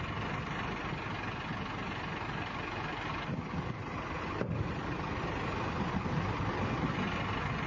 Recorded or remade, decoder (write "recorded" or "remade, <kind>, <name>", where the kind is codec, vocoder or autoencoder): recorded